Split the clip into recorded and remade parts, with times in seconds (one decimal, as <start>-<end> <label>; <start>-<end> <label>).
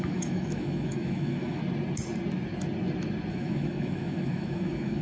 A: 0.0-1.6 remade; 1.6-3.3 recorded; 3.3-5.0 remade